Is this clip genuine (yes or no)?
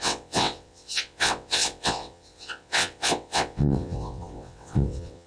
no